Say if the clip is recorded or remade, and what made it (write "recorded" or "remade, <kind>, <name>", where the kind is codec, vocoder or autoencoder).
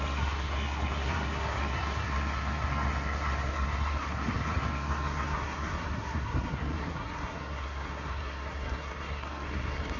remade, codec, SNAC